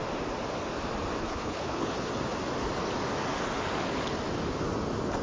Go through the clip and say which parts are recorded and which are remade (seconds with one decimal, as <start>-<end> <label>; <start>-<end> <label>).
0.0-1.2 recorded; 1.2-2.1 remade; 2.1-5.2 recorded